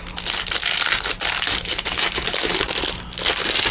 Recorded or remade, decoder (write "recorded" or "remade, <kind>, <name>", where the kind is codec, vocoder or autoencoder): recorded